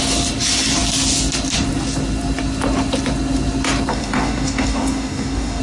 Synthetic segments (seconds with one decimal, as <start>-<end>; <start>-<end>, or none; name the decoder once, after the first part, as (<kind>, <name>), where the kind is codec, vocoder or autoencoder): 3.9-5.6 (codec, DAC)